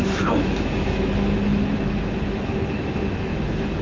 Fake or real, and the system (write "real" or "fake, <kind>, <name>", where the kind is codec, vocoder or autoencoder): fake, autoencoder, DAC-VAE